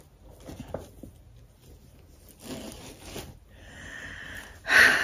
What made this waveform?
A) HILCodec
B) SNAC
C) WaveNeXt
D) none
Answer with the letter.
D